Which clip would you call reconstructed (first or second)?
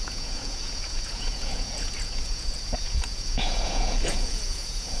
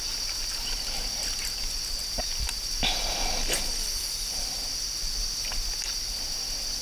first